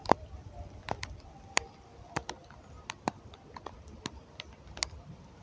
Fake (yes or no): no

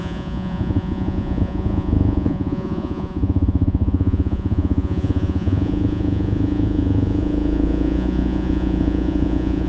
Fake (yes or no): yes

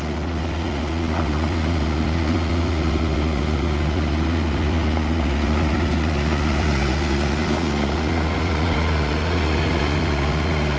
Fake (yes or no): yes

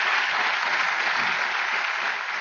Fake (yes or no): no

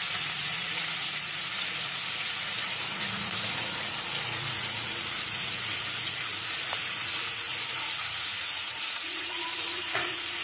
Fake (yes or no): yes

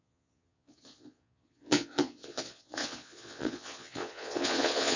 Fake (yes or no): yes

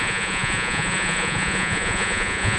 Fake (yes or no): yes